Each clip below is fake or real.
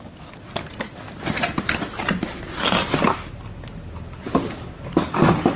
real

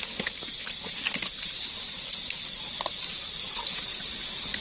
real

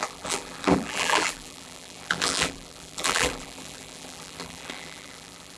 fake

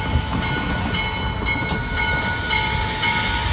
real